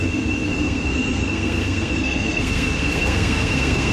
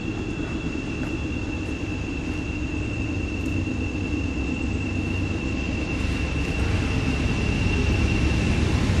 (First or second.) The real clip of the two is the second